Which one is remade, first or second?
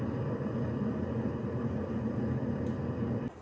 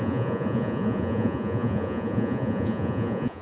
second